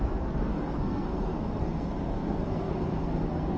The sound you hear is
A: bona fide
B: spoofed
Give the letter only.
B